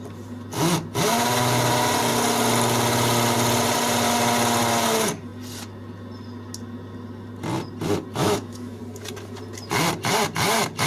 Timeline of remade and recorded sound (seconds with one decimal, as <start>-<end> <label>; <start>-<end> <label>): 0.0-8.2 recorded; 8.2-8.8 remade; 8.8-10.9 recorded